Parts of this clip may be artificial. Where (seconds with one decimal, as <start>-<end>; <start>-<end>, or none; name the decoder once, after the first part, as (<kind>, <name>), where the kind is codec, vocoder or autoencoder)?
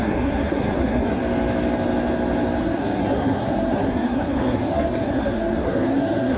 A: 0.0-1.2 (codec, SNAC); 2.6-6.4